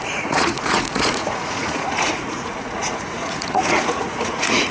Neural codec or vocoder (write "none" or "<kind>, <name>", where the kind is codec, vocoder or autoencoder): vocoder, Vocos